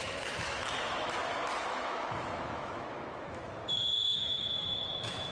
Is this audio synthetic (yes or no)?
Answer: yes